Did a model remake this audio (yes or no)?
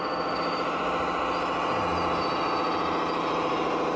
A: no